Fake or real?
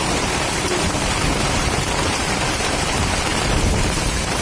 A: fake